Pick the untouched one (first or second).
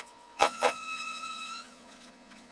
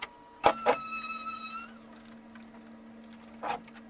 second